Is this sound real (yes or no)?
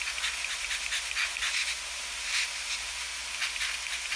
yes